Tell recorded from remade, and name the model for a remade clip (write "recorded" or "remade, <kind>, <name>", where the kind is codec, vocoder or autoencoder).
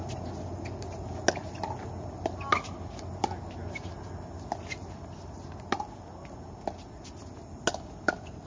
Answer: recorded